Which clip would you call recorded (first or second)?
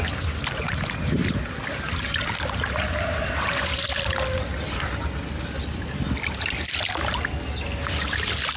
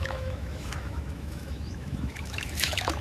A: first